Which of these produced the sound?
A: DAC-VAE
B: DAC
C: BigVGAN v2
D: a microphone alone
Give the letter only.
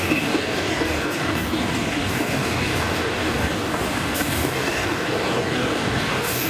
B